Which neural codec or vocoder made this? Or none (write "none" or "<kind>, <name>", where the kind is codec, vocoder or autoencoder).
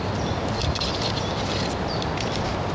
none